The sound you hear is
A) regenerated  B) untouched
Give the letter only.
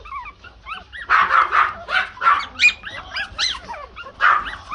B